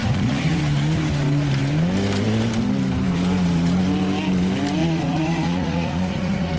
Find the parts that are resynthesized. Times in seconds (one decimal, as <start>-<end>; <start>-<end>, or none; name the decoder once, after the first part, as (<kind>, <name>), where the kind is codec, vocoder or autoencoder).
0.0-0.6 (vocoder, Vocos); 4.8-6.6